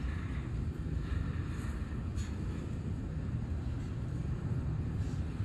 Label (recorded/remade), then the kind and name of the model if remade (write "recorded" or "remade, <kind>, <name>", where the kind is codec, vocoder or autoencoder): recorded